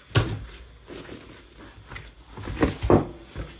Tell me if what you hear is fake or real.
real